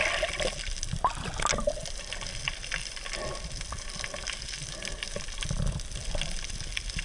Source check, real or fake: real